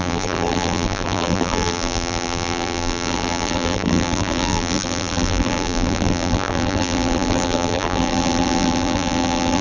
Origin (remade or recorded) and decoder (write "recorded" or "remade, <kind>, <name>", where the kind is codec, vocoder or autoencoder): remade, vocoder, BigVGAN v2